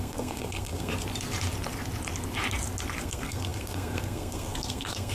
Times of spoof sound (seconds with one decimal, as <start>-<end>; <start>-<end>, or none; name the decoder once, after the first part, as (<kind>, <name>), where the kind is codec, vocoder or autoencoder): 0.0-0.9 (codec, SNAC); 3.0-5.1